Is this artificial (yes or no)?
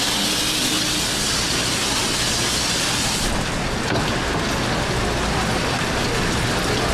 no